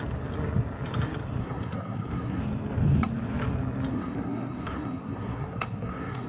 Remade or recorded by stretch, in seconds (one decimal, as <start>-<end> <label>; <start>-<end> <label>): 0.0-1.4 recorded; 1.4-2.4 remade; 2.4-3.9 recorded; 3.9-6.3 remade